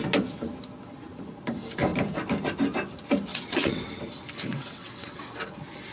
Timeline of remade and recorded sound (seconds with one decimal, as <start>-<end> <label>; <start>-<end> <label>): 0.0-3.3 recorded; 3.3-3.9 remade; 3.9-4.5 recorded; 4.5-5.2 remade; 5.2-5.9 recorded